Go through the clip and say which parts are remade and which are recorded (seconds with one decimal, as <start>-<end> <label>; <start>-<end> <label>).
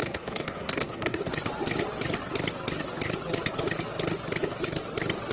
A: 0.0-1.3 remade; 1.3-5.3 recorded